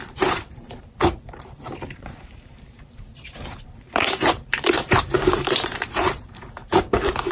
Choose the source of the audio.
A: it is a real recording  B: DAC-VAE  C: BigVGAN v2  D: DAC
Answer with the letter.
C